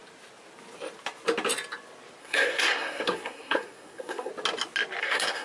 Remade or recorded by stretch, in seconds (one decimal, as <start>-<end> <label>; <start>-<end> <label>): 0.0-2.2 recorded; 2.2-4.3 remade; 4.3-5.0 recorded; 5.0-5.4 remade